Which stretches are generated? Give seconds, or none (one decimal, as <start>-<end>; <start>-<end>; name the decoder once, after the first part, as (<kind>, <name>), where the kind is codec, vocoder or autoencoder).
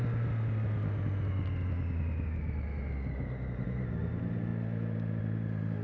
none